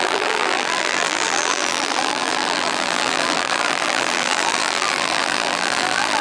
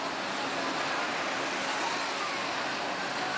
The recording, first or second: second